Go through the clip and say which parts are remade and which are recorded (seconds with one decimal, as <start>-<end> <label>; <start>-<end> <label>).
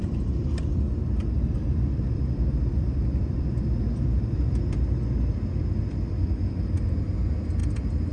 0.0-1.0 recorded; 1.0-4.5 remade; 4.5-8.1 recorded